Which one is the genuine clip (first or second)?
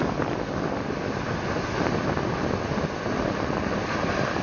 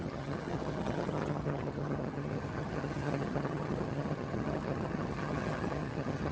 first